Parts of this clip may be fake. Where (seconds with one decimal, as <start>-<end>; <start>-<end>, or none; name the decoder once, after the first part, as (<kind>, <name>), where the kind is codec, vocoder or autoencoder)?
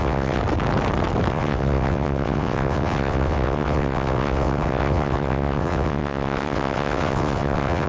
0.0-0.4 (vocoder, WaveNeXt); 1.3-7.9